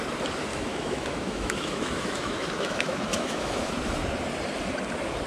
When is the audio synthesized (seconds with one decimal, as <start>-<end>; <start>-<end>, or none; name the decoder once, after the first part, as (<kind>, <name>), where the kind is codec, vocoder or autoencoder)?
0.5-3.7 (autoencoder, DAC-VAE)